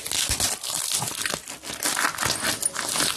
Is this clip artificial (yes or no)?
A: no